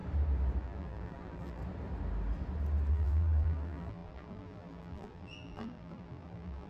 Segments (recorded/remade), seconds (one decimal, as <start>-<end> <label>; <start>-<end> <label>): 0.0-0.6 recorded; 0.6-1.6 remade; 1.6-2.9 recorded; 2.9-6.7 remade